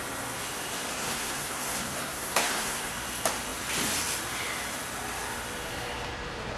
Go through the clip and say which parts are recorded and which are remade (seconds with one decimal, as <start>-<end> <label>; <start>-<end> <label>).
0.0-0.9 recorded; 0.9-2.9 remade; 2.9-6.6 recorded